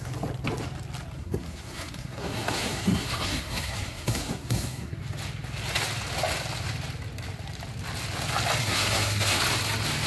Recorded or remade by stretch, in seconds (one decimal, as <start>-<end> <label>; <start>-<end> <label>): 0.0-1.2 recorded; 1.2-5.0 remade; 5.0-8.6 recorded; 8.6-9.4 remade; 9.4-10.1 recorded